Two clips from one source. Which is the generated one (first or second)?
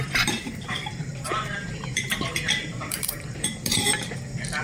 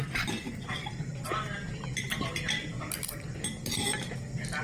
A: first